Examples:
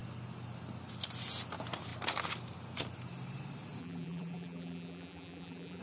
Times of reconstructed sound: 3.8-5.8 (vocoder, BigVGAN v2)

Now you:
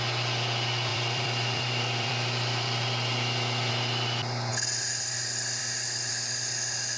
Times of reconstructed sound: 0.9-3.7 (vocoder, BigVGAN v2)

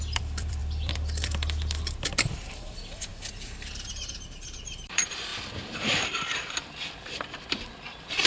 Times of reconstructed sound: 0.0-3.1 (vocoder, BigVGAN v2); 3.9-8.3